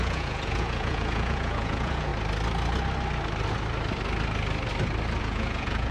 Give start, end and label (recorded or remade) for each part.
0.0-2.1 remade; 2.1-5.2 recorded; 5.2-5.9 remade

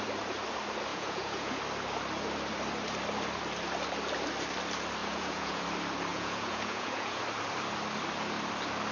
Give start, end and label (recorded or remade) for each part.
0.0-0.9 recorded; 0.9-1.6 remade; 1.6-5.0 recorded; 5.0-5.6 remade; 5.6-6.1 recorded; 6.1-7.2 remade; 7.2-8.9 recorded

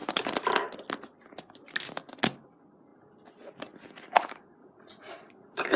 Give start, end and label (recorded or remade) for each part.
0.0-4.6 recorded; 4.6-5.8 remade

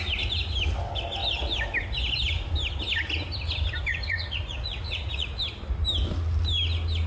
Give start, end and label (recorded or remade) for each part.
0.0-3.9 recorded; 3.9-5.4 remade; 5.4-7.1 recorded

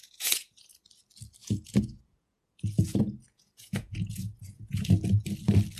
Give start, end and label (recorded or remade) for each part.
0.0-0.8 remade; 0.8-1.4 recorded; 1.4-4.9 remade; 4.9-5.8 recorded

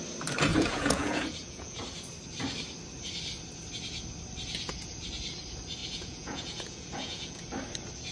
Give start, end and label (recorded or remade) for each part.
0.0-0.5 recorded; 0.5-1.8 remade; 1.8-5.8 recorded; 5.8-7.4 remade; 7.4-8.1 recorded

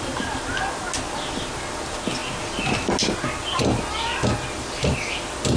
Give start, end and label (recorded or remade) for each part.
0.0-5.6 recorded

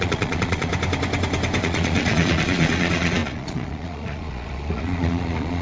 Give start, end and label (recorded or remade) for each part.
0.0-0.7 remade; 0.7-1.6 recorded; 1.6-5.6 remade